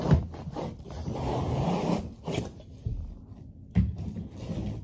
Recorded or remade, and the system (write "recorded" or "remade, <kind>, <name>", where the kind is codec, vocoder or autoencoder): recorded